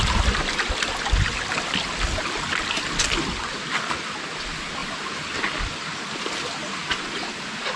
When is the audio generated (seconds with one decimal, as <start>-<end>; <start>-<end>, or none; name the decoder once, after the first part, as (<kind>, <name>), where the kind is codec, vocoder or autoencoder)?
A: none